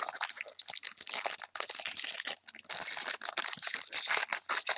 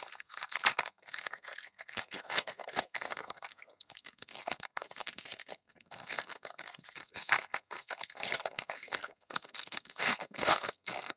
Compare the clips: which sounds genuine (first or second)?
first